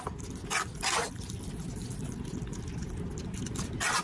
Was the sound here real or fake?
real